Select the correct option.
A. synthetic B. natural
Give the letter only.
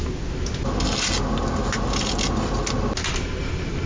B